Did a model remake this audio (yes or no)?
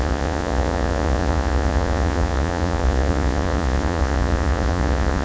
yes